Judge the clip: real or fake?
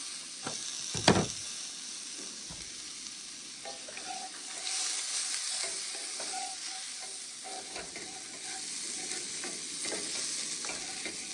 real